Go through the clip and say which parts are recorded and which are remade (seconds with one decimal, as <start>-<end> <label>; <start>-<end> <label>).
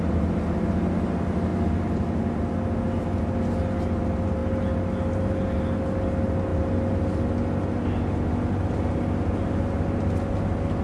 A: 0.0-10.8 recorded